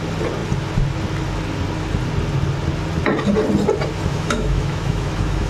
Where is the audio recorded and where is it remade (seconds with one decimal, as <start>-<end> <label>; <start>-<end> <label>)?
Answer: 0.0-4.1 recorded; 4.1-5.5 remade